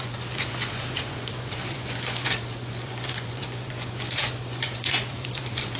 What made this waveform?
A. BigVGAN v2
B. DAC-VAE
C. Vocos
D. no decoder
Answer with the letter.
C